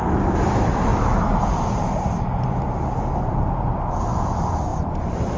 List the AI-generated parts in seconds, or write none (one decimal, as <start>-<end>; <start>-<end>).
0.9-4.1; 4.7-5.4